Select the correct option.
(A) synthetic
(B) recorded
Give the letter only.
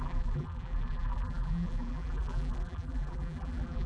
A